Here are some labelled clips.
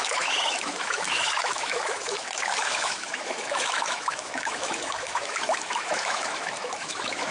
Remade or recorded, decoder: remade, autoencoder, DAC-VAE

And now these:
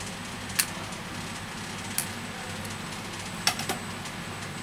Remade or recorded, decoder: recorded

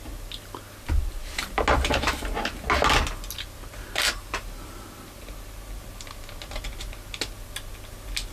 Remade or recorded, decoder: recorded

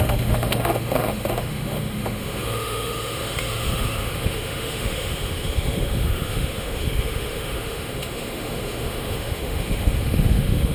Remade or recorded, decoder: remade, autoencoder, DAC-VAE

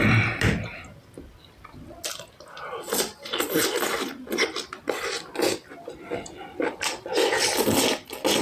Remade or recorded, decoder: recorded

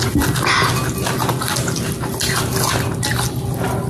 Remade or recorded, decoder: recorded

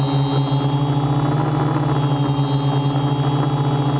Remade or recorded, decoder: recorded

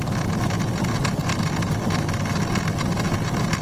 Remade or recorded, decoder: recorded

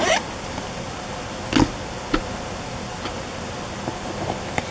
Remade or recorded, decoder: recorded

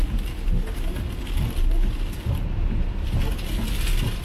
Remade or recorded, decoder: recorded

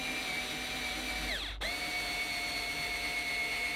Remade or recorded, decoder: recorded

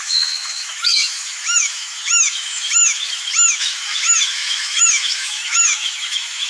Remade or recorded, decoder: remade, autoencoder, DAC-VAE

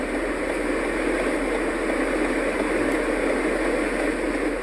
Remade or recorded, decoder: recorded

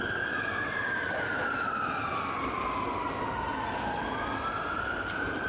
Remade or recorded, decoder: recorded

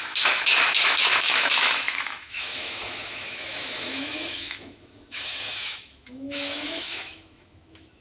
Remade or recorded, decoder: remade, autoencoder, DAC-VAE